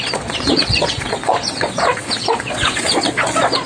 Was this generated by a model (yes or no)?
yes